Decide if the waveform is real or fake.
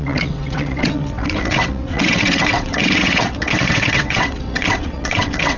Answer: fake